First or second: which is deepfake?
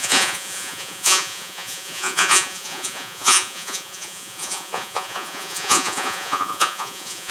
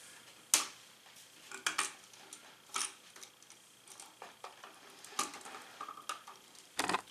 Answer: first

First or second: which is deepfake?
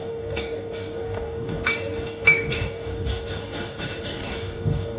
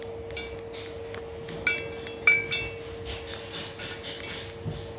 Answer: first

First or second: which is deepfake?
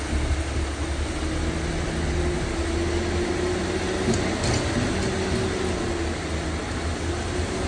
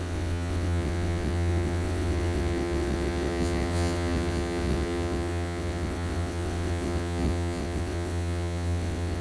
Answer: second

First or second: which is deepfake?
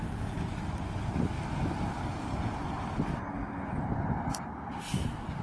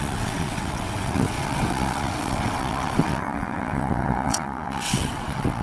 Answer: second